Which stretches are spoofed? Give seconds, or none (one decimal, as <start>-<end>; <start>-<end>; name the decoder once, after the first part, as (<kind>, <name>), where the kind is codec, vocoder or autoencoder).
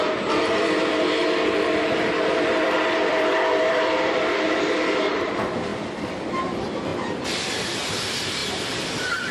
0.0-5.7 (vocoder, BigVGAN v2); 6.3-8.4